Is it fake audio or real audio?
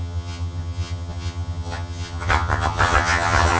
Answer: fake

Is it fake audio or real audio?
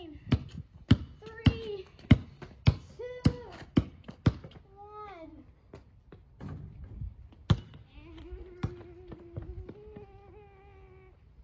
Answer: real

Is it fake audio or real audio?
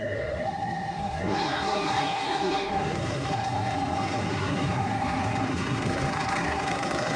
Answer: fake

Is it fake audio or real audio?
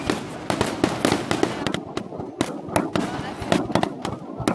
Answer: real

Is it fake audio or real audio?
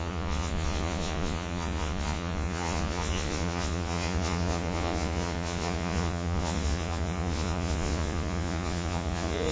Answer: fake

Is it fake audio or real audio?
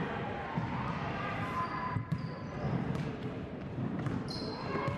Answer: fake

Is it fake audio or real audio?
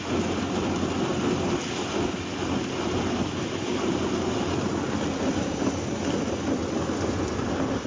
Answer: real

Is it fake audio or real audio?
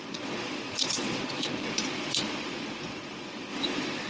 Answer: fake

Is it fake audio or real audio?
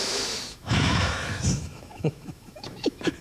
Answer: fake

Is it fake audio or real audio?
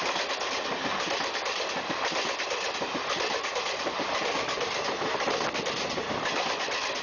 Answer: real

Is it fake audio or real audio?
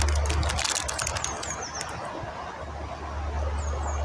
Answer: real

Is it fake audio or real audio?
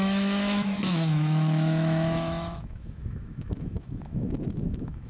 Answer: fake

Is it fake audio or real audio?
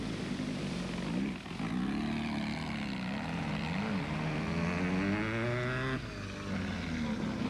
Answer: real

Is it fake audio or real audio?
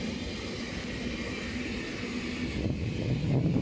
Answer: real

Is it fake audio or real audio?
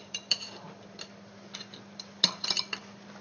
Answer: fake